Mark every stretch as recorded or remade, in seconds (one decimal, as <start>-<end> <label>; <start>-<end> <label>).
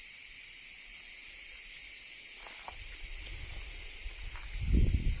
0.0-0.9 remade; 0.9-3.0 recorded; 3.0-5.2 remade